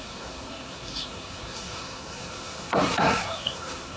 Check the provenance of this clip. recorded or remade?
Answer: remade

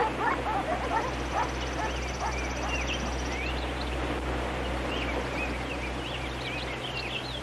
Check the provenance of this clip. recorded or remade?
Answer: recorded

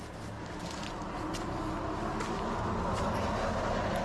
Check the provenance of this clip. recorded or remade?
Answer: recorded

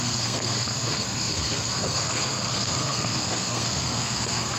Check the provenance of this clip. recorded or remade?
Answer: remade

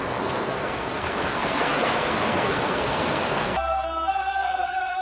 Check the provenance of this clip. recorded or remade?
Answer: remade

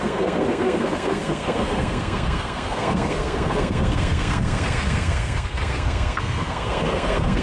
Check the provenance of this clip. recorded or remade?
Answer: remade